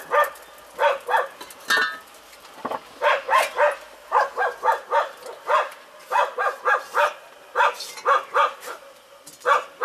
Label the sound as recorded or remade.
recorded